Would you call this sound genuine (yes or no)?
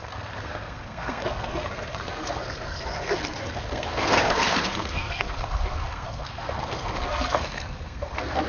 no